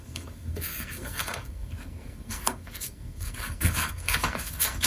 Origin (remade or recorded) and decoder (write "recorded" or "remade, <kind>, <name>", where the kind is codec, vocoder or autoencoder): remade, codec, SNAC